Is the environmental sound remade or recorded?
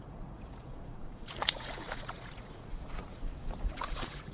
remade